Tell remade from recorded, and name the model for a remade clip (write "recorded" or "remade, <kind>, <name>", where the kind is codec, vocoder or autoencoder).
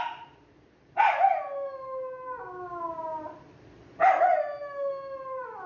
recorded